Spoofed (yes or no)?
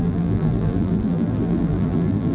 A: yes